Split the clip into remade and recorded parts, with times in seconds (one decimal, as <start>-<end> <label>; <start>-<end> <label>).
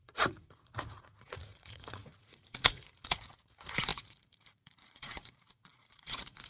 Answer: 0.0-6.5 remade